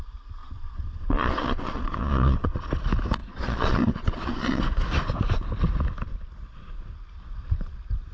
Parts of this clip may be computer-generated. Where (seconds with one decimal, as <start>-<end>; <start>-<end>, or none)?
0.4-2.6; 3.2-4.6